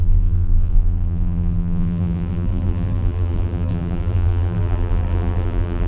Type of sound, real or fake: fake